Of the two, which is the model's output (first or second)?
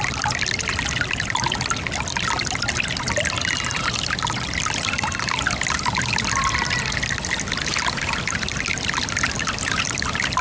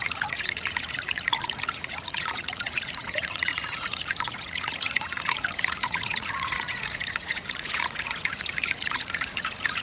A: second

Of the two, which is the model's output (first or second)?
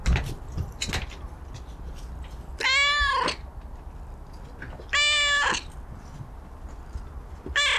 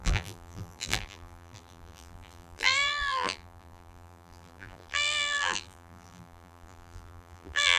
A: second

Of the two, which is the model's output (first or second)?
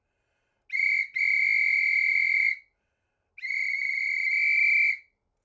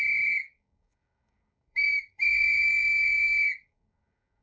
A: second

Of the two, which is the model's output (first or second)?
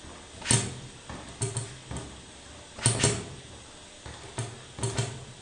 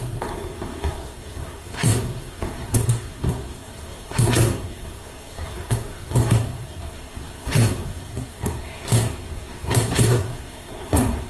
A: second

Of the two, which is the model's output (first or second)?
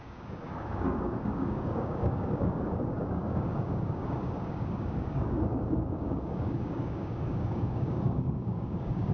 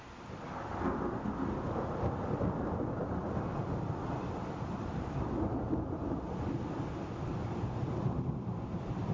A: first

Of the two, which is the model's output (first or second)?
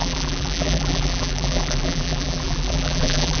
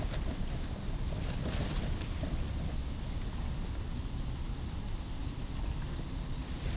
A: first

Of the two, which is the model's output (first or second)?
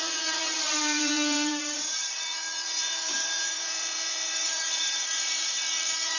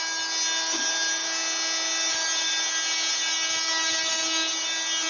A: first